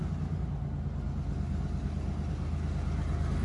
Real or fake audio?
real